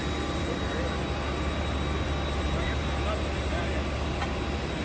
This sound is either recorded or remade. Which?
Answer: recorded